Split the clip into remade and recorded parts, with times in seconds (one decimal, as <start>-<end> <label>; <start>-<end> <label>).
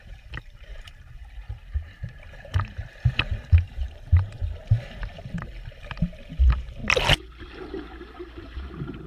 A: 0.0-6.8 remade; 6.8-7.6 recorded; 7.6-9.1 remade